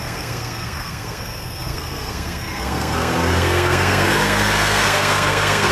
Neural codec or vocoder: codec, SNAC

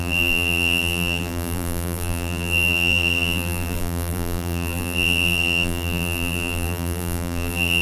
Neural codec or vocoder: vocoder, BigVGAN v2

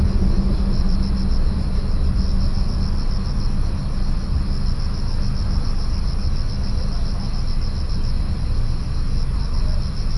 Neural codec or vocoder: none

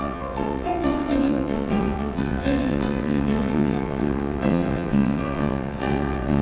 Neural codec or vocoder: vocoder, WaveNeXt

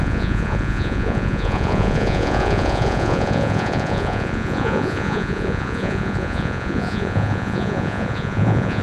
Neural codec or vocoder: vocoder, Vocos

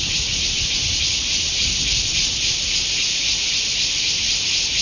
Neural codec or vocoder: none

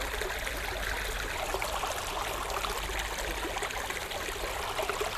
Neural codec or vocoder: none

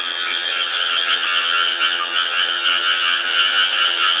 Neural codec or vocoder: vocoder, HiFi-GAN